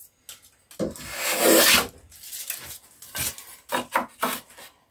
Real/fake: real